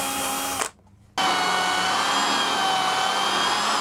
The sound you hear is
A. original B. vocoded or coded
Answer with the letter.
A